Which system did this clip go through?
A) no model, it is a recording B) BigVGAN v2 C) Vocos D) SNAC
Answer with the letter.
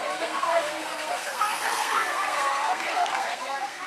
D